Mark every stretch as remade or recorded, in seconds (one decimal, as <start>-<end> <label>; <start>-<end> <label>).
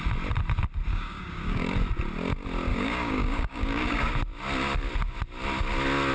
0.0-0.9 recorded; 0.9-1.7 remade; 1.7-2.7 recorded; 2.7-4.1 remade; 4.1-6.1 recorded